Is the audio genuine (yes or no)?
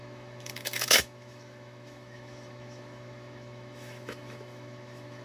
no